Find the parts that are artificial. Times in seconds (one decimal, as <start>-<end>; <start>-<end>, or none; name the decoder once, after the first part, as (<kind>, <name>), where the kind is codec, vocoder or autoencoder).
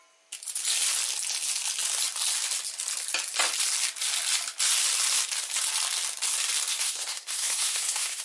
6.7-8.2 (codec, SNAC)